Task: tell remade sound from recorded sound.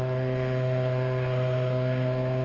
remade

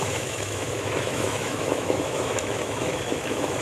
remade